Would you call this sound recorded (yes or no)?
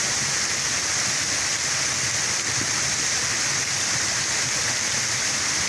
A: yes